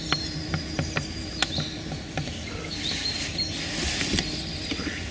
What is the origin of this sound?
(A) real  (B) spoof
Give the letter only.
A